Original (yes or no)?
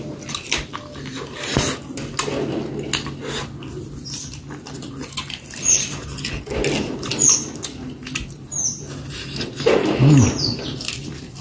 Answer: yes